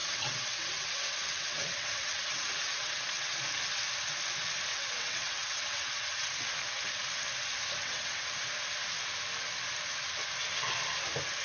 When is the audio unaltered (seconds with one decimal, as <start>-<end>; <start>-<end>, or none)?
3.3-4.7; 6.3-7.8; 8.3-11.4